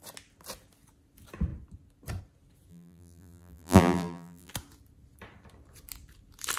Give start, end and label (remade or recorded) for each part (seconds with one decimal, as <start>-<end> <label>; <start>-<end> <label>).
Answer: 0.0-2.7 recorded; 2.7-4.5 remade; 4.5-6.6 recorded